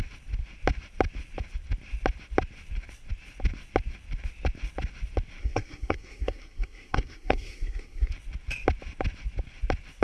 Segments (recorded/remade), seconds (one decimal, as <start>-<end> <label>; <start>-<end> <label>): 0.0-5.4 recorded; 5.4-8.1 remade; 8.1-10.0 recorded